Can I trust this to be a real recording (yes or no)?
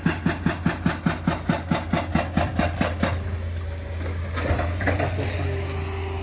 yes